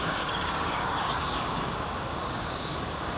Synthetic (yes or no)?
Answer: yes